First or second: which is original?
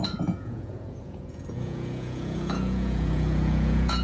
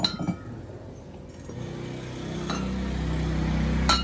second